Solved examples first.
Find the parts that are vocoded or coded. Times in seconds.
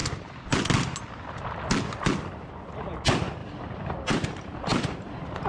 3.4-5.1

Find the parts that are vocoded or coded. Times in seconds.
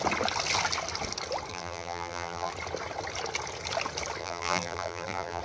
1.5-2.5; 4.2-5.4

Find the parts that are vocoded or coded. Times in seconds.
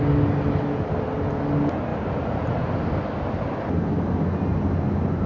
1.9-2.6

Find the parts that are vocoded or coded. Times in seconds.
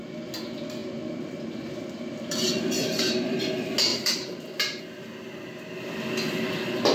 3.9-4.8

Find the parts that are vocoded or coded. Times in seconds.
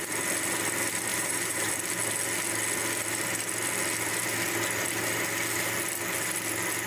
1.1-1.7